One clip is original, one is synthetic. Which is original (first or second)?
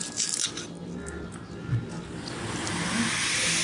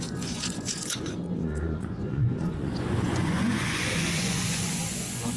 first